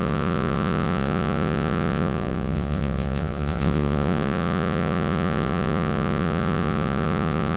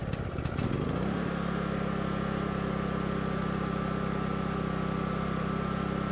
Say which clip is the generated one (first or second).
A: first